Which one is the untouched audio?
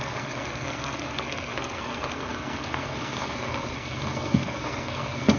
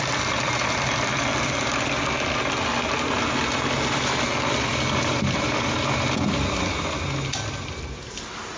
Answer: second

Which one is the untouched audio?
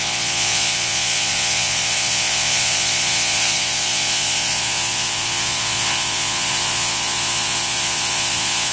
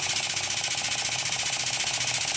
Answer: second